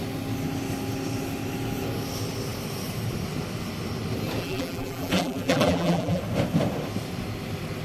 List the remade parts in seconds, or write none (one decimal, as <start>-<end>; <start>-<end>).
4.4-6.2